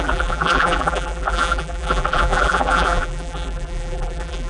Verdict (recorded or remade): remade